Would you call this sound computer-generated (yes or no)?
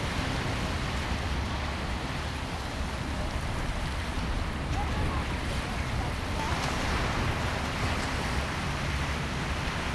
no